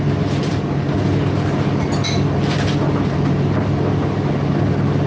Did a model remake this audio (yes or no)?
no